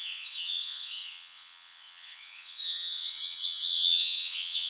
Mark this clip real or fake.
fake